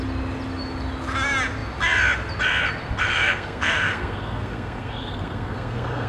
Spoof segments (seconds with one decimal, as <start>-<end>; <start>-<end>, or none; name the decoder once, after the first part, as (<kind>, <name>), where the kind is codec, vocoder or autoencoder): 3.0-6.1 (codec, SNAC)